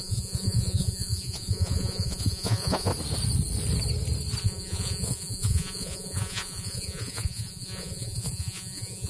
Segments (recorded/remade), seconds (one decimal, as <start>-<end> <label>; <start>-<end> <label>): 0.0-2.9 remade; 2.9-4.4 recorded; 4.4-9.1 remade